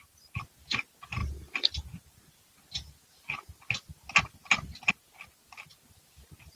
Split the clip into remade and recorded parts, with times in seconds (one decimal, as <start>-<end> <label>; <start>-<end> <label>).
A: 0.0-6.6 recorded

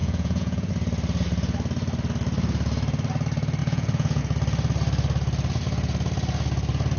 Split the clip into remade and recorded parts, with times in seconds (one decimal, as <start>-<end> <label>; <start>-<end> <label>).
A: 0.0-0.7 remade; 0.7-3.6 recorded; 3.6-4.2 remade; 4.2-7.0 recorded

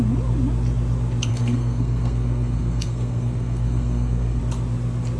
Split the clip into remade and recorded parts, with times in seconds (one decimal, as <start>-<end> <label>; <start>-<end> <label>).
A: 0.0-1.3 recorded; 1.3-4.4 remade; 4.4-5.2 recorded

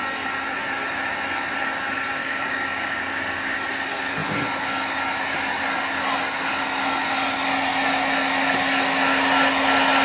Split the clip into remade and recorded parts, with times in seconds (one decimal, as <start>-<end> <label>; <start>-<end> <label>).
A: 0.0-2.2 recorded; 2.2-3.6 remade; 3.6-10.0 recorded

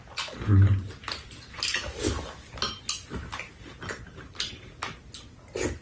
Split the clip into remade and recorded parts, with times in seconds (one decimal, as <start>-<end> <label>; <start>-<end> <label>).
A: 0.0-5.8 recorded

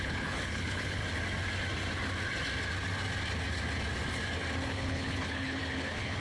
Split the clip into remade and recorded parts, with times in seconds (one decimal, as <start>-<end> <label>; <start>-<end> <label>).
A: 0.0-1.0 remade; 1.0-4.7 recorded; 4.7-6.2 remade

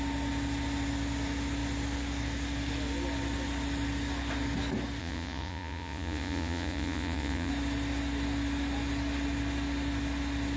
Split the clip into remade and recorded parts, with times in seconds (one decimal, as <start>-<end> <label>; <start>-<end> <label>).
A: 0.0-5.0 recorded; 5.0-7.5 remade; 7.5-10.6 recorded

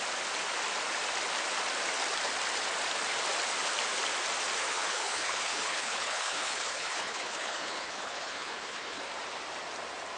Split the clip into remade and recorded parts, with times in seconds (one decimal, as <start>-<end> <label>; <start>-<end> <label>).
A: 0.0-4.7 recorded; 4.7-9.0 remade; 9.0-10.2 recorded